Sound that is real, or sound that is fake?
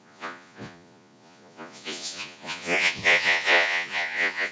fake